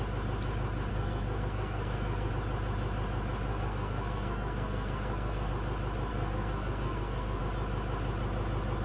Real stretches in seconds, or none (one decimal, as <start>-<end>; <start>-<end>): 0.0-0.9; 2.3-3.5; 5.5-6.1; 7.4-8.8